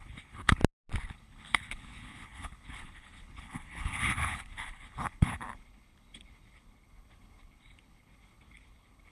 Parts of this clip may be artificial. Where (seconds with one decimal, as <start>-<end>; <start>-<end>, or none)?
0.0-0.6; 1.1-9.1